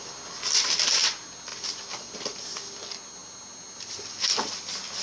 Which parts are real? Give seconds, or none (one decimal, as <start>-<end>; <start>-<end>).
0.0-5.0